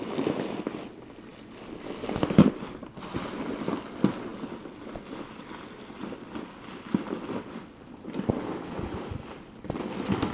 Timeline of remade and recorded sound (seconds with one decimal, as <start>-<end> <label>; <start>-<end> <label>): 0.0-10.3 recorded